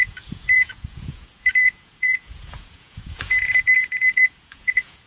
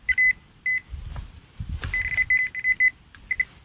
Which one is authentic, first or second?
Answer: second